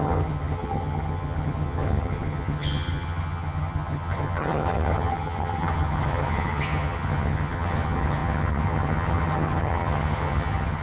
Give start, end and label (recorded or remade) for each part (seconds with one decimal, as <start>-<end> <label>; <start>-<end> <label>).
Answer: 0.0-10.8 remade